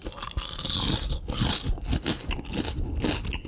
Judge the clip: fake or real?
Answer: real